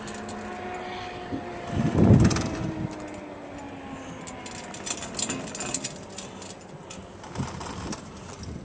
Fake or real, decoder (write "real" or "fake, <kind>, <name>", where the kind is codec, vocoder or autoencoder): real